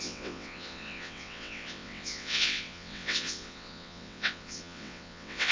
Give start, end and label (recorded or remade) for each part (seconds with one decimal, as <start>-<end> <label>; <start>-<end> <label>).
0.0-5.5 remade